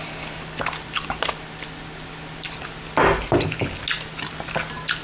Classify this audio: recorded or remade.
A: recorded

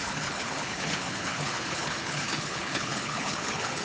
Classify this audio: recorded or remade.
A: remade